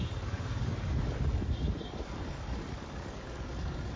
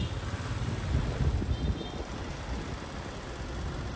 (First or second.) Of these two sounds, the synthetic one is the first